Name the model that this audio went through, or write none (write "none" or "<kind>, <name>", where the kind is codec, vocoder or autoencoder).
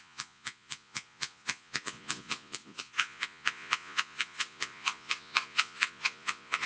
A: vocoder, Vocos